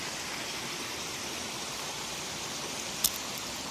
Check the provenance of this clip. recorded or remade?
remade